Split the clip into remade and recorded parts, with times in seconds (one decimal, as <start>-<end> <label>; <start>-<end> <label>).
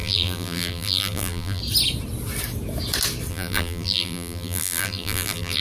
0.0-1.6 remade; 1.6-3.3 recorded; 3.3-5.6 remade